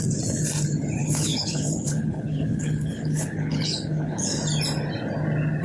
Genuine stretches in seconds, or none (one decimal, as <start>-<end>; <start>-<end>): 0.0-1.0; 4.4-5.6